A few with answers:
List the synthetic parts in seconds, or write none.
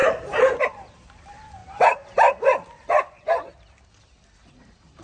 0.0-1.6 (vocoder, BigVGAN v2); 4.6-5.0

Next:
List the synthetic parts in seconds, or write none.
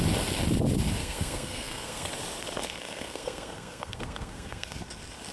1.0-2.1 (codec, SNAC); 2.6-4.8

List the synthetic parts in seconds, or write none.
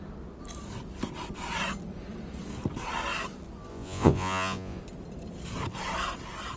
3.7-4.8 (vocoder, Vocos)